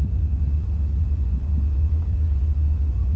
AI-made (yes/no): yes